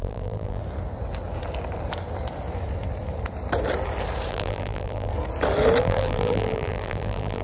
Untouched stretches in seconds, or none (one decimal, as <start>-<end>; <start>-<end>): 0.6-4.3; 5.1-5.8